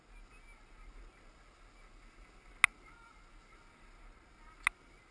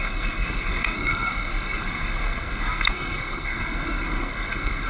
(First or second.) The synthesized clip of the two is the second